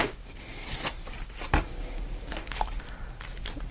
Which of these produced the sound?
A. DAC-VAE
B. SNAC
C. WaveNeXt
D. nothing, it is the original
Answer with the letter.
D